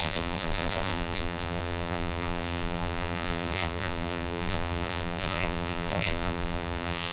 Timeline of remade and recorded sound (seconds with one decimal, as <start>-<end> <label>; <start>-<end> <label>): 0.0-7.1 remade